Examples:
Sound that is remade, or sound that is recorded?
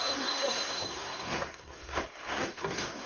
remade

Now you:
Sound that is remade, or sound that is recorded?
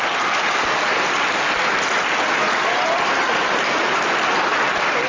recorded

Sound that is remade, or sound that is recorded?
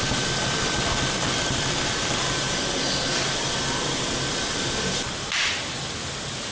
remade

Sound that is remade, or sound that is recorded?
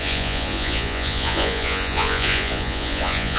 remade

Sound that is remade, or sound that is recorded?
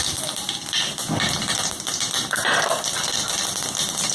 recorded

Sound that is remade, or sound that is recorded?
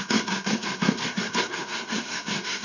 remade